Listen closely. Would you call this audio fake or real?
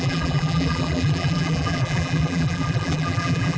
fake